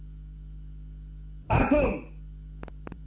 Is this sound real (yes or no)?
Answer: yes